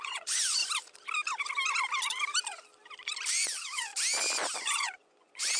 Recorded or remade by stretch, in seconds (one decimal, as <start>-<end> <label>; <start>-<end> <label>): 0.0-0.6 remade; 0.6-3.3 recorded; 3.3-3.9 remade; 3.9-4.6 recorded; 4.6-5.6 remade